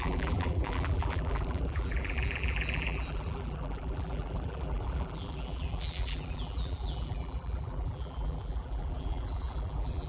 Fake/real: fake